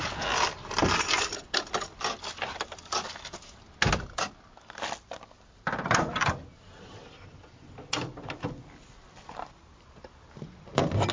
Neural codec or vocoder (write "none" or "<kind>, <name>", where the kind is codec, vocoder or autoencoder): none